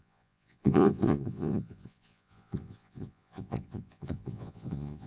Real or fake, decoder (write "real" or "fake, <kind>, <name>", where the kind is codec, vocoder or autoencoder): fake, vocoder, Vocos